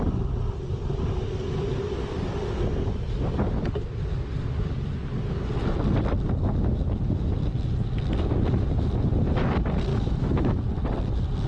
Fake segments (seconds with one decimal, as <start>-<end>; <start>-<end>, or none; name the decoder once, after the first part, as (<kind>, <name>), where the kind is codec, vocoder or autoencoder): 9.9-10.6 (autoencoder, DAC-VAE)